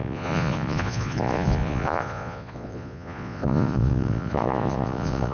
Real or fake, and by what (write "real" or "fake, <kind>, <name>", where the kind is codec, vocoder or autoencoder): fake, vocoder, Vocos